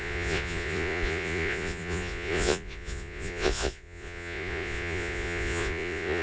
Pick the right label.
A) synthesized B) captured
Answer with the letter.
A